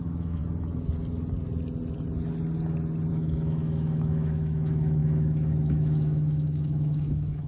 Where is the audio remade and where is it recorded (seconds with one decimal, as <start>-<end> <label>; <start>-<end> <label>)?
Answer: 0.0-0.4 remade; 0.4-3.1 recorded; 3.1-7.5 remade